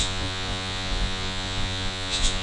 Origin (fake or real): fake